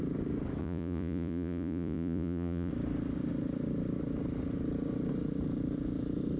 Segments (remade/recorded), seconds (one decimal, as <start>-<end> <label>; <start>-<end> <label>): 0.0-0.6 recorded; 0.6-2.7 remade; 2.7-6.4 recorded